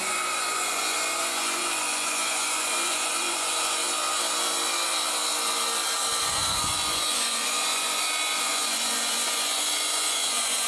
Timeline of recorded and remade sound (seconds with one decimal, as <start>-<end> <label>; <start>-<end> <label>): 0.0-3.8 remade; 3.8-6.2 recorded; 6.2-10.7 remade